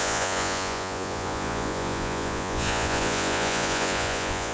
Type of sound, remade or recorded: remade